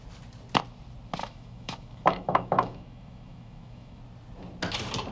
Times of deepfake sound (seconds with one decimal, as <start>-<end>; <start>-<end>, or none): 1.2-4.0